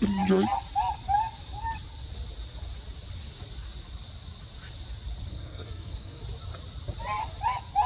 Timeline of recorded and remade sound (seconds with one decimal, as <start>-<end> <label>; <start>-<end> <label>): 0.0-5.3 recorded; 5.3-6.2 remade; 6.2-7.9 recorded